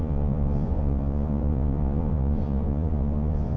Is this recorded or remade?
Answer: remade